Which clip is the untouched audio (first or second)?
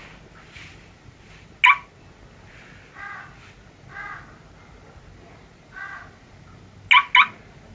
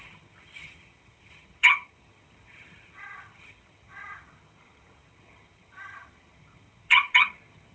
first